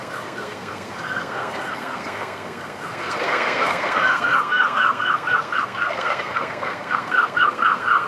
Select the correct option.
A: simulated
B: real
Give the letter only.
A